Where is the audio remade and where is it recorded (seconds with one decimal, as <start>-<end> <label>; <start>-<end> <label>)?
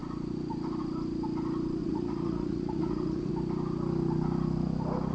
0.0-1.8 recorded; 1.8-3.3 remade; 3.3-5.1 recorded